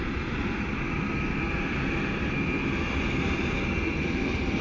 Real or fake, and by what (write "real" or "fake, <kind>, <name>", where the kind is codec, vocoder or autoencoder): real